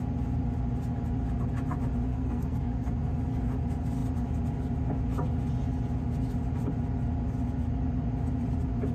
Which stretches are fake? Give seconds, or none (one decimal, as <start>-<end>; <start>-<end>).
2.1-2.9